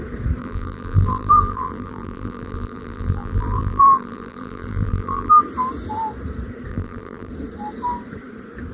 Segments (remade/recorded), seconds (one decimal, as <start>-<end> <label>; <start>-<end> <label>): 0.0-0.4 recorded; 0.4-5.3 remade; 5.3-6.7 recorded; 6.7-7.3 remade; 7.3-8.7 recorded

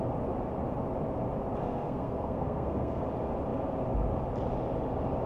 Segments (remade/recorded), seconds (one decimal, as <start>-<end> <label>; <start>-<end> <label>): 0.0-1.6 recorded; 1.6-3.0 remade; 3.0-5.3 recorded

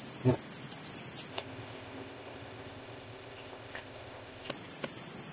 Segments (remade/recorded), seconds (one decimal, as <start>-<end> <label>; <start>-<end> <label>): 0.0-1.3 recorded; 1.3-4.5 remade; 4.5-5.3 recorded

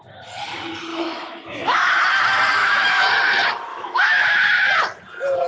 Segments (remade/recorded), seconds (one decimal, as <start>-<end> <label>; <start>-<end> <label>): 0.0-0.9 recorded; 0.9-1.9 remade; 1.9-2.6 recorded; 2.6-3.1 remade; 3.1-3.7 recorded; 3.7-4.7 remade; 4.7-5.5 recorded

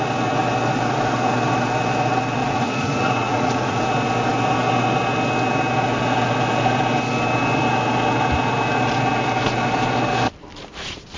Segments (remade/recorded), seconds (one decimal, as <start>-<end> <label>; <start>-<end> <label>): 0.0-2.4 recorded; 2.4-3.8 remade; 3.8-11.2 recorded

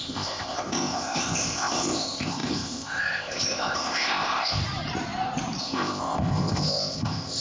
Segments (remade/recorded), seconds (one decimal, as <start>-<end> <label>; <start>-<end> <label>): 0.0-4.6 remade; 4.6-5.6 recorded; 5.6-7.4 remade

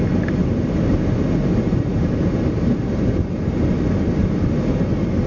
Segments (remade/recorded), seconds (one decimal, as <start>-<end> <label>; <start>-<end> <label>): 0.0-0.4 recorded; 0.4-1.0 remade; 1.0-1.7 recorded; 1.7-3.1 remade; 3.1-5.3 recorded

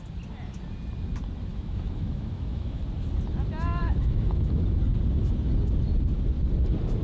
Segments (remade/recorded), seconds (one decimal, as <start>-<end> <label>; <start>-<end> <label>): 0.0-1.5 recorded; 1.5-2.8 remade; 2.8-3.8 recorded; 3.8-4.8 remade; 4.8-7.0 recorded